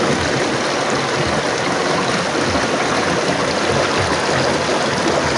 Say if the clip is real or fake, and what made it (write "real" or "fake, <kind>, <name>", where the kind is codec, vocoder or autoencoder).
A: real